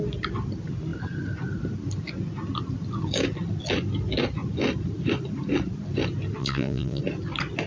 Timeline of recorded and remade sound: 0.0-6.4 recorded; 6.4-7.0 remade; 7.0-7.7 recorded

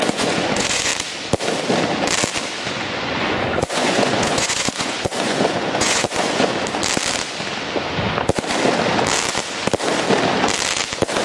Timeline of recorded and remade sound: 0.0-0.9 remade; 0.9-2.7 recorded; 2.7-6.5 remade; 6.5-11.2 recorded

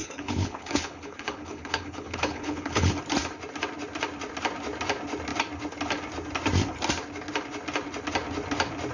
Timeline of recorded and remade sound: 0.0-2.9 remade; 2.9-8.9 recorded

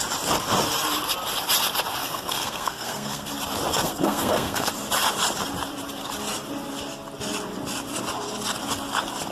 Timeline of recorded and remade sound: 0.0-2.0 recorded; 2.0-3.3 remade; 3.3-3.7 recorded; 3.7-4.7 remade; 4.7-9.3 recorded

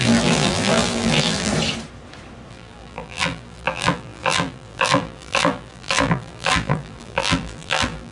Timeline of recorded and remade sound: 0.0-1.5 remade; 1.5-2.5 recorded; 2.5-8.1 remade